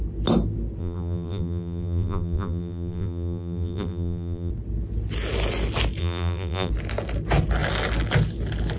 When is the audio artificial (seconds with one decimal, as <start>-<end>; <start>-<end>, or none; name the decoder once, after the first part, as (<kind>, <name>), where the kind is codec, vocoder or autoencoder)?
0.8-4.5 (vocoder, BigVGAN v2); 6.0-6.7

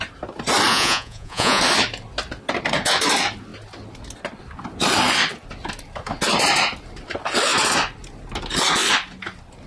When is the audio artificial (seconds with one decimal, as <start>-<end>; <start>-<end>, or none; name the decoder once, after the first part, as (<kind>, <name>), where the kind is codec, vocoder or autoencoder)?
0.7-1.6 (vocoder, Vocos)

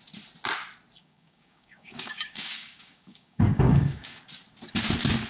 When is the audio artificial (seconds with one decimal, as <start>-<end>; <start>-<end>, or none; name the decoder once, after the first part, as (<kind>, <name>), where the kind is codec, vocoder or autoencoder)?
1.0-4.2 (codec, DAC)

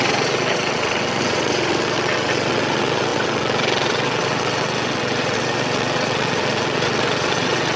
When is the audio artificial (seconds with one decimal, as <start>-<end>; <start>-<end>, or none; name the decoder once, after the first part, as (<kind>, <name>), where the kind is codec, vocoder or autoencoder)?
0.0-7.8 (vocoder, WaveNeXt)